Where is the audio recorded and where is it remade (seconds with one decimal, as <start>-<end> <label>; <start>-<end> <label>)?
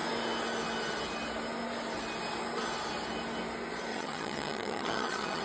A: 0.0-3.9 recorded; 3.9-5.4 remade